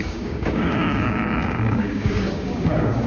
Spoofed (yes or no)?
yes